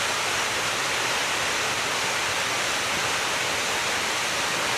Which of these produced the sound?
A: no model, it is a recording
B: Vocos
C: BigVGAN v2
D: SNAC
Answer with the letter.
A